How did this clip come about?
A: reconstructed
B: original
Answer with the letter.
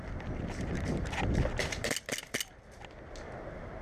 B